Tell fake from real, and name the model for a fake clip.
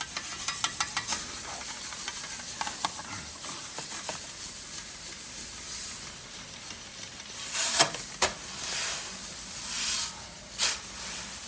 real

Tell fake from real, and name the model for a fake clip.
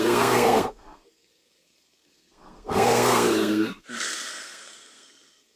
fake, codec, SNAC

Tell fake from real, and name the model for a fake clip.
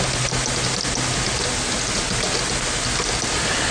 real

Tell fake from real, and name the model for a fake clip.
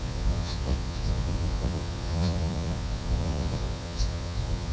fake, vocoder, Vocos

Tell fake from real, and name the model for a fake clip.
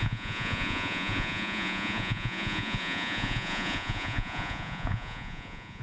fake, vocoder, Vocos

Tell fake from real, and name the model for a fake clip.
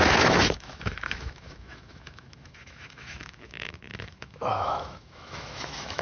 fake, autoencoder, DAC-VAE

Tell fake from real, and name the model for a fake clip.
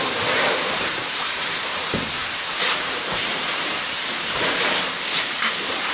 fake, vocoder, BigVGAN v2